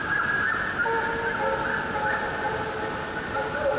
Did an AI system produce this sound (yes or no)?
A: no